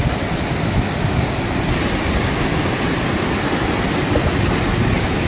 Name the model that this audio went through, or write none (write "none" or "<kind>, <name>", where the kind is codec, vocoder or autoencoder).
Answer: none